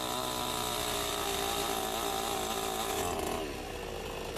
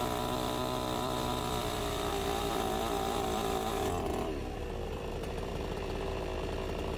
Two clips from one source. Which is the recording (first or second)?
first